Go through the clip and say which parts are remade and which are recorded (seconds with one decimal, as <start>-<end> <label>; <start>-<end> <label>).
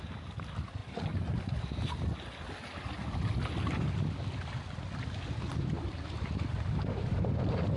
0.0-5.5 recorded; 5.5-7.8 remade